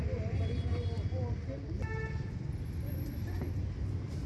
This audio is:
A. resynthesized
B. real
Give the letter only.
B